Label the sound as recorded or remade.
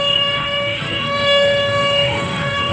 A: remade